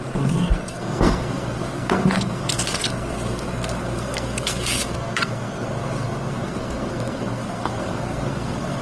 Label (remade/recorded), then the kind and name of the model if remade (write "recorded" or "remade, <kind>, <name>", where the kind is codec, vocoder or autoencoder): remade, codec, SNAC